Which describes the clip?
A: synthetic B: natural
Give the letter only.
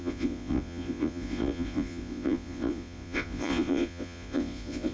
A